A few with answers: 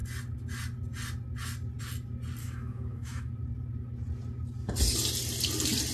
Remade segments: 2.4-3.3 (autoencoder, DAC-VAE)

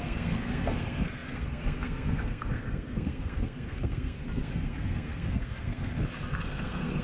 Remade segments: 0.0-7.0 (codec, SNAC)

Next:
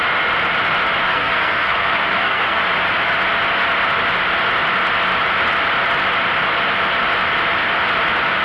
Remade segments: 1.0-2.6 (codec, SNAC)

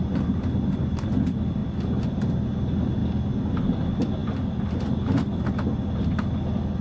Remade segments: none

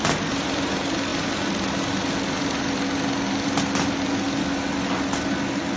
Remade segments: none

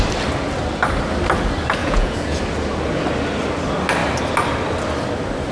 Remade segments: 1.8-2.4 (vocoder, Vocos)

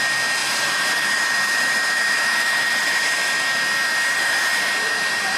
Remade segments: 0.4-3.1 (vocoder, BigVGAN v2); 3.9-5.4

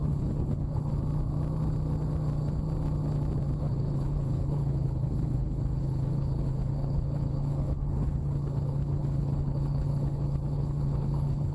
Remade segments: 0.0-0.9 (codec, HILCodec); 3.6-11.5